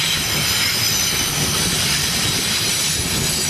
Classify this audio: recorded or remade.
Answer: recorded